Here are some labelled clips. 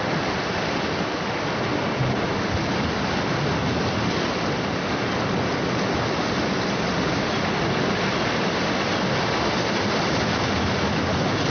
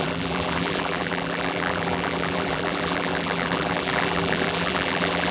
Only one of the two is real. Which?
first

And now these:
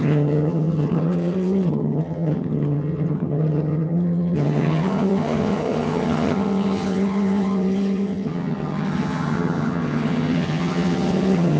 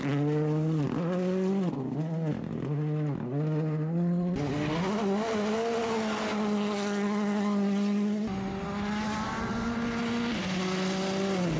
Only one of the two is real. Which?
second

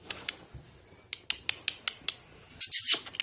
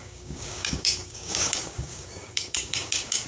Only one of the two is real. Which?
first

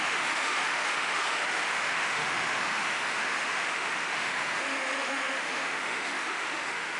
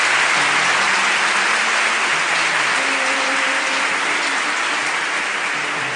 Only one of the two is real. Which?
second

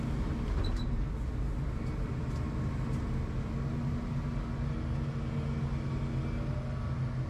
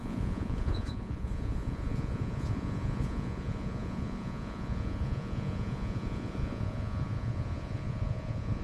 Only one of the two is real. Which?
first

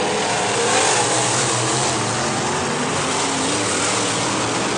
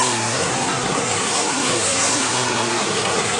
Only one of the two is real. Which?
first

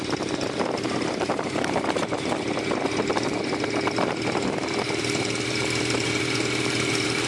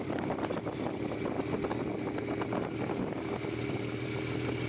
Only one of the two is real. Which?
second